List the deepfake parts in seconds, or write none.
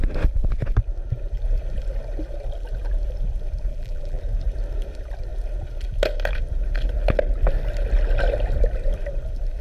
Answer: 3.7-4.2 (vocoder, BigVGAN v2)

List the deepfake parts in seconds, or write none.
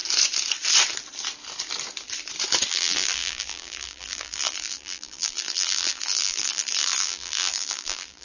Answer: 2.7-8.2 (vocoder, BigVGAN v2)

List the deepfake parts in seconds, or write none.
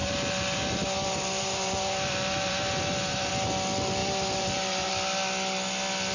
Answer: 0.0-3.3 (vocoder, BigVGAN v2); 4.0-4.9